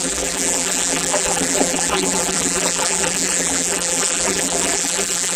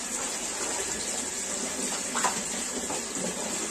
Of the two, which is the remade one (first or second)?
first